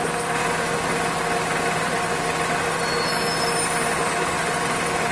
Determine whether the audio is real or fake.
real